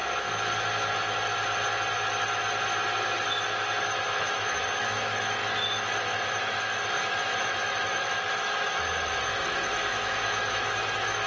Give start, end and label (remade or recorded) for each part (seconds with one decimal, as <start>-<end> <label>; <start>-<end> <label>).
0.0-3.8 recorded; 3.8-11.3 remade